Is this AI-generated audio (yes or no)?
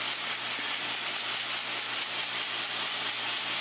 no